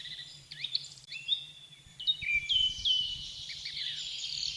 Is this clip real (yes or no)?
no